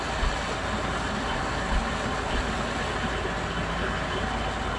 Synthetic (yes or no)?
no